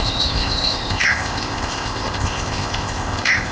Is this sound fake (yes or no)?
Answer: yes